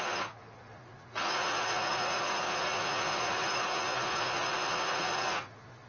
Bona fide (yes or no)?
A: no